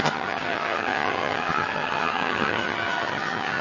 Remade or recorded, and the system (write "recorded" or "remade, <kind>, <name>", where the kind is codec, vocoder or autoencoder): remade, vocoder, HiFi-GAN